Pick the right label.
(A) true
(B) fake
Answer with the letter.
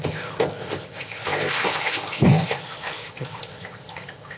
B